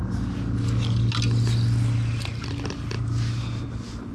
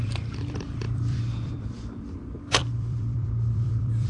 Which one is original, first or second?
first